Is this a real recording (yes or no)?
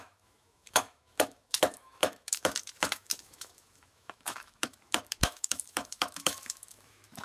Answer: no